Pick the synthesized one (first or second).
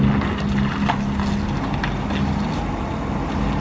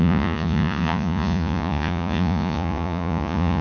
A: second